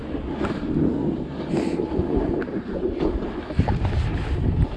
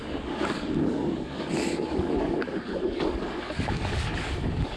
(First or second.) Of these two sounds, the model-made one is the second